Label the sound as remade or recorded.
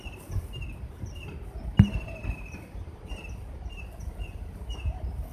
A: remade